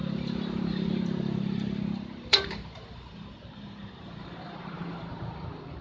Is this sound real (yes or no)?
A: no